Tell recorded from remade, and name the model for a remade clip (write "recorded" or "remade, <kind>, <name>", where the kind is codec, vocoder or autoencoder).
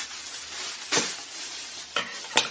recorded